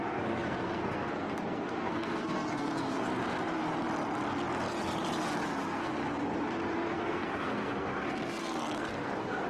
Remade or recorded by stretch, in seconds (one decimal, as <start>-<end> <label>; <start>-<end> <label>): 0.0-3.1 remade; 3.1-5.6 recorded; 5.6-6.0 remade; 6.0-6.9 recorded; 6.9-9.5 remade

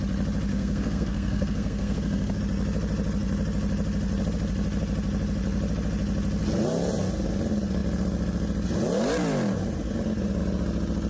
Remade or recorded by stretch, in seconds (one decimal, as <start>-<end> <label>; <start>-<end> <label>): 0.0-0.5 recorded; 0.5-2.4 remade; 2.4-11.1 recorded

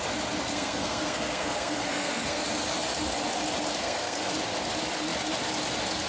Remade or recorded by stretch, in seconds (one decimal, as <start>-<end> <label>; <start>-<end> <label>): 0.0-0.5 recorded; 0.5-2.4 remade; 2.4-3.8 recorded; 3.8-4.3 remade; 4.3-6.1 recorded